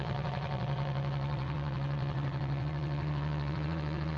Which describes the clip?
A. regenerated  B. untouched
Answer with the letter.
A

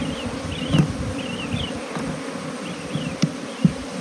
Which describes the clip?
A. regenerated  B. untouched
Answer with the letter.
B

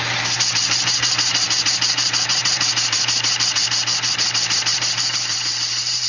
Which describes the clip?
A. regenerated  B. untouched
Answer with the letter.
A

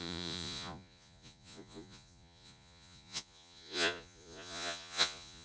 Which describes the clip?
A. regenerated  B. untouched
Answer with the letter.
A